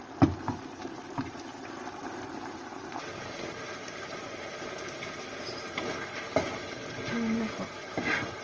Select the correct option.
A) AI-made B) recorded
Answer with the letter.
B